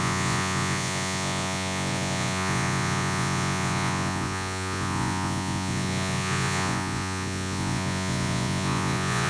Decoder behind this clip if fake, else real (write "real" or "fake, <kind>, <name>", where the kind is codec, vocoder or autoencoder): fake, vocoder, Vocos